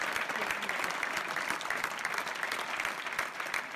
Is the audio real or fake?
real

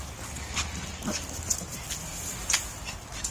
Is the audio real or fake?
real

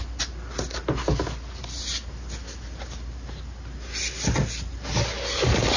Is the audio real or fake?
real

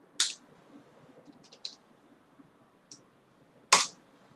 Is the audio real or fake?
real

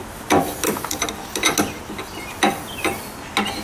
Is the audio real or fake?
real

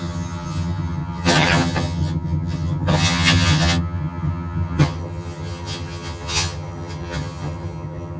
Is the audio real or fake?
fake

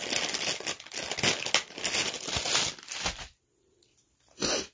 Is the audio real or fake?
real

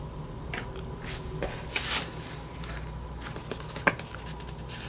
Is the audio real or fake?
real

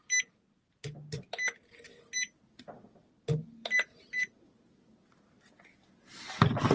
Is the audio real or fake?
real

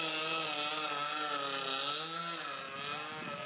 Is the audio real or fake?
real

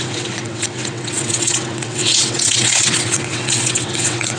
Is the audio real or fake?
fake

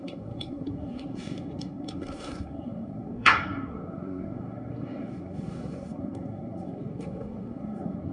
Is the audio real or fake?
fake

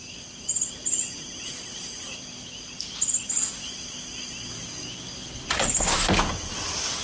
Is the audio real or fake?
real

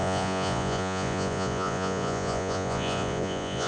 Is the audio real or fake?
fake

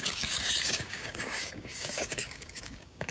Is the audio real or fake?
fake